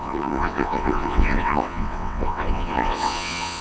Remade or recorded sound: remade